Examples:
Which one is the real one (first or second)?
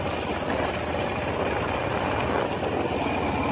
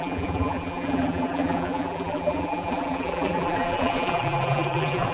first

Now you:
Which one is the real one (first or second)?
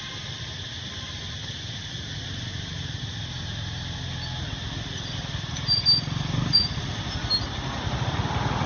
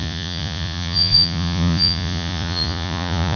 first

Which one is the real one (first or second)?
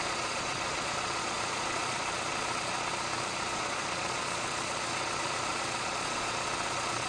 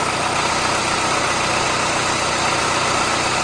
second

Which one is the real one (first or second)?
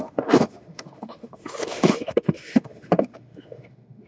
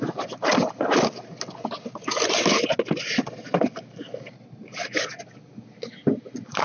second